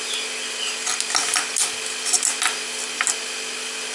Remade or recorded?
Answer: recorded